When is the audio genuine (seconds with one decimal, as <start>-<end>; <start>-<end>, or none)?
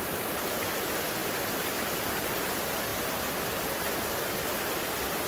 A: 0.0-5.3